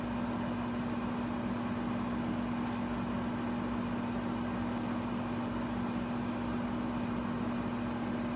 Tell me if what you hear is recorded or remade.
recorded